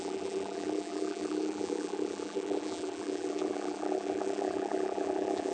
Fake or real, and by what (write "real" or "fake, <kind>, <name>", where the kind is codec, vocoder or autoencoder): fake, vocoder, BigVGAN v2